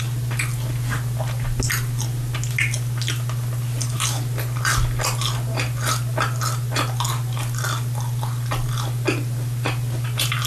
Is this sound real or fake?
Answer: real